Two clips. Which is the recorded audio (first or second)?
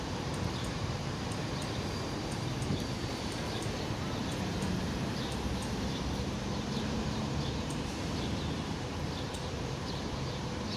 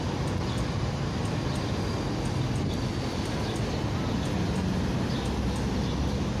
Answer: second